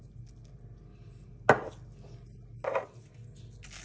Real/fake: real